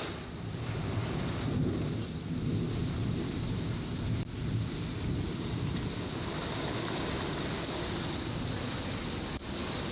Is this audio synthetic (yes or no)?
no